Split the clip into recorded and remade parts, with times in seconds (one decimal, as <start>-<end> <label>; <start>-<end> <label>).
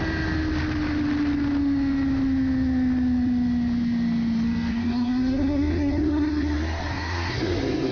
0.0-4.7 recorded; 4.7-7.9 remade